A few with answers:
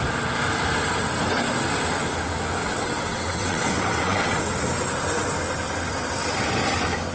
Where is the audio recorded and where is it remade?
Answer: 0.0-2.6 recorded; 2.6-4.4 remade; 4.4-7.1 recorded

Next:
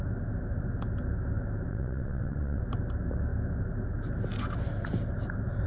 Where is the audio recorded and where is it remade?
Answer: 0.0-1.7 recorded; 1.7-2.6 remade; 2.6-5.7 recorded

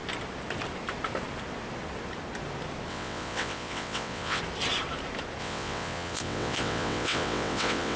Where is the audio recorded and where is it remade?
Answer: 0.0-2.9 recorded; 2.9-4.4 remade; 4.4-5.4 recorded; 5.4-8.0 remade

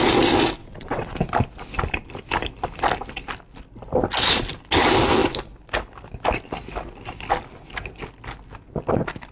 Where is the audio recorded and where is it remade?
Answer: 0.0-0.6 recorded; 0.6-1.2 remade; 1.2-9.3 recorded